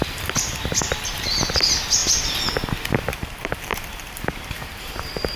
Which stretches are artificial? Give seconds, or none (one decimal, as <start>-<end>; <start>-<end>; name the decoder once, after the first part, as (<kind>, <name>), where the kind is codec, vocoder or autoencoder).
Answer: 0.0-2.0 (vocoder, BigVGAN v2); 2.7-5.4